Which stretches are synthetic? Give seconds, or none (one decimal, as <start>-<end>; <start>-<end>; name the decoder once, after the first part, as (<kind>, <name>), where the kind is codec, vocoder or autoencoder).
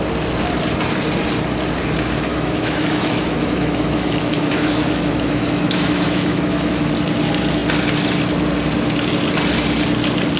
2.3-6.9 (autoencoder, DAC-VAE)